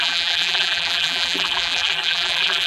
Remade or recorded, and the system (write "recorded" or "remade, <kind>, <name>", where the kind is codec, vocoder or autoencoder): remade, vocoder, BigVGAN v2